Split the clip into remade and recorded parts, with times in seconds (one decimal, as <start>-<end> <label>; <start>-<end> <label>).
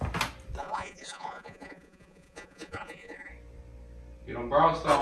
0.0-0.6 recorded; 0.6-3.3 remade; 3.3-5.0 recorded